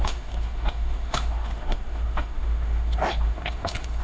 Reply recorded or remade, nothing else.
remade